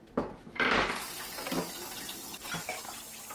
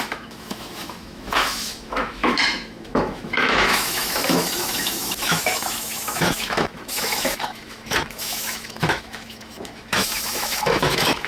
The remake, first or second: second